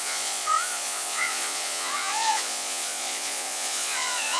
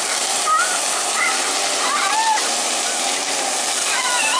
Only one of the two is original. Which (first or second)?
second